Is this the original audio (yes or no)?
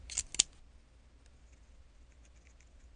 yes